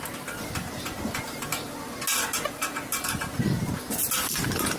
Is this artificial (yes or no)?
no